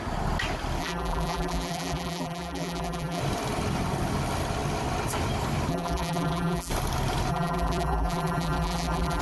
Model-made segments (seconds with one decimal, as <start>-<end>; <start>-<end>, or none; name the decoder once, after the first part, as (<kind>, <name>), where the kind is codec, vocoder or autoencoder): 0.8-3.2 (vocoder, BigVGAN v2); 5.7-6.7; 7.3-9.2

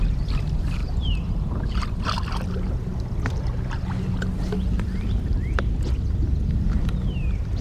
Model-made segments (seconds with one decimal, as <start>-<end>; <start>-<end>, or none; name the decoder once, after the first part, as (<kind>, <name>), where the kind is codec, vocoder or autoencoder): 0.8-1.6 (vocoder, BigVGAN v2)

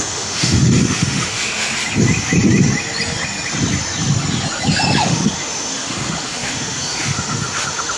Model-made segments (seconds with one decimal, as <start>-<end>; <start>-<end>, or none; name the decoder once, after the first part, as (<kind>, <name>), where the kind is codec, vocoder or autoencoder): 0.0-1.7 (autoencoder, DAC-VAE); 5.0-8.0

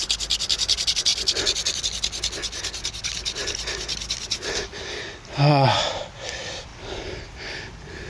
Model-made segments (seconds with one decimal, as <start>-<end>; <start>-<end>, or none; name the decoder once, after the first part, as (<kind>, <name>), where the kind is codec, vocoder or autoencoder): none

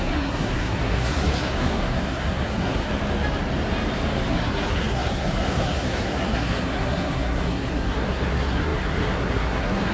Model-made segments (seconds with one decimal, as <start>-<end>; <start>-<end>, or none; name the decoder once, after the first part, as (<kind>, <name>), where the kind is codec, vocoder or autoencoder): 0.0-2.9 (codec, SNAC); 4.3-9.9

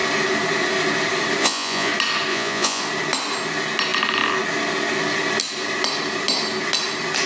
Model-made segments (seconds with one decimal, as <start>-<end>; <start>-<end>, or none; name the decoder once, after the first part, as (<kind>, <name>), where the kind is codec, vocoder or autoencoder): 1.4-1.9 (vocoder, Vocos); 2.3-2.8